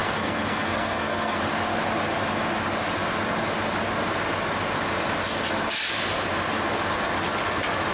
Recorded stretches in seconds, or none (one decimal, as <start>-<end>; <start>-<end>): 1.4-7.9